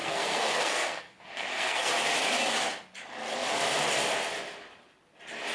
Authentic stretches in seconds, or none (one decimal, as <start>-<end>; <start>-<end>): 1.9-5.5